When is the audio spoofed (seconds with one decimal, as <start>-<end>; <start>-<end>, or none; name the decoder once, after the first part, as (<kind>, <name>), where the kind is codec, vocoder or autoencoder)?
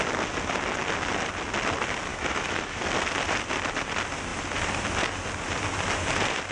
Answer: 2.1-2.8 (autoencoder, DAC-VAE)